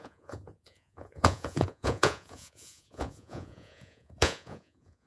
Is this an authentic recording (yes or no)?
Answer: no